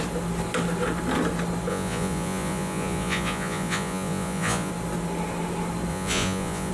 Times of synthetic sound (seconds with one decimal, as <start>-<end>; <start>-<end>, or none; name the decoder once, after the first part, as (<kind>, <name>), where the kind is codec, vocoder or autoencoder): 1.7-4.7 (vocoder, Vocos); 5.9-6.7